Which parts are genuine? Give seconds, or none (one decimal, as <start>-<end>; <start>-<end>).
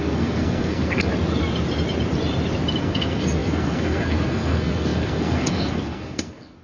1.1-2.8